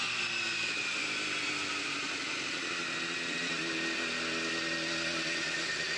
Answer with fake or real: real